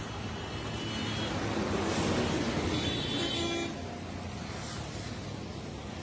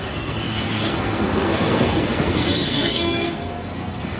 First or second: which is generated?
second